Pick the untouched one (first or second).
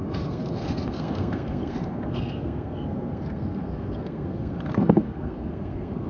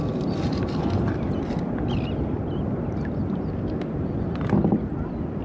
second